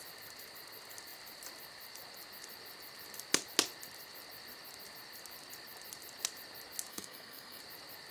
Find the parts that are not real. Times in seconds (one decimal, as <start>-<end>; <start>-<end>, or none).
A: 6.9-7.6